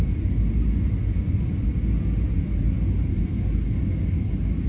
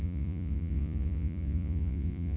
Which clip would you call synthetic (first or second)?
second